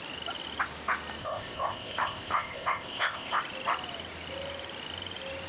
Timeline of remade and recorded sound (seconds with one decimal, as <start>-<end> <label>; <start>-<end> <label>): 0.0-1.2 recorded; 1.2-3.4 remade; 3.4-5.5 recorded